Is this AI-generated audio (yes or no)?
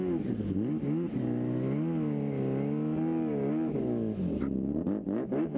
no